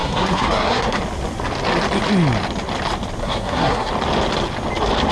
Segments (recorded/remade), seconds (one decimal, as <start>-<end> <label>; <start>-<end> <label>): 0.0-1.0 remade; 1.0-3.2 recorded; 3.2-3.9 remade; 3.9-5.1 recorded